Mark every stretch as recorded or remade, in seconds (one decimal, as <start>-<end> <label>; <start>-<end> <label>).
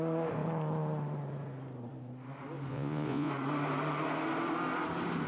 0.0-2.7 recorded; 2.7-3.3 remade; 3.3-5.3 recorded